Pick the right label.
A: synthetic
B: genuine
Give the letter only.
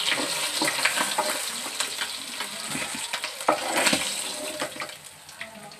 B